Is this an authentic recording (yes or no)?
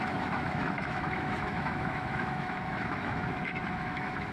no